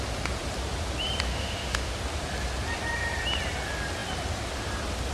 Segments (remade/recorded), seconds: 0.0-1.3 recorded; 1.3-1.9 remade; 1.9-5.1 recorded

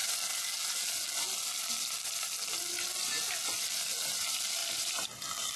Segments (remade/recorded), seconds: 0.0-5.6 recorded